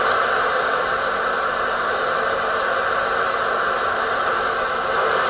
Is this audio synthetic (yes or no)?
no